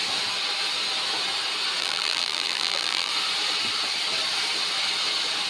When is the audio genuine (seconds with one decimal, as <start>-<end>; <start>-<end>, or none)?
0.0-1.8; 3.1-5.5